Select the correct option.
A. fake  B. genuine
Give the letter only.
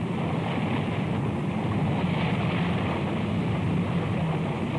B